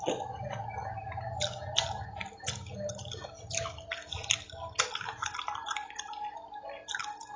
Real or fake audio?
real